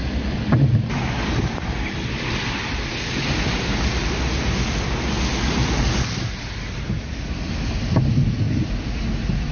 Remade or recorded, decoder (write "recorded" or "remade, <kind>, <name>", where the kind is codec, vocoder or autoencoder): recorded